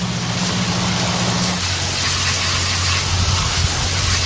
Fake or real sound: real